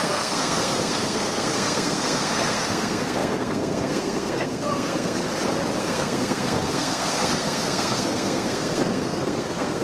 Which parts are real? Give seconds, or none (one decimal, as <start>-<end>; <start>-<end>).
5.2-5.8

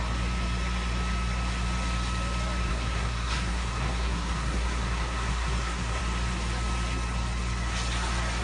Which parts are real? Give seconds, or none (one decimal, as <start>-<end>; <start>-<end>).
0.0-2.7; 6.0-8.4